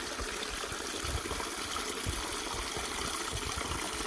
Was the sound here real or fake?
real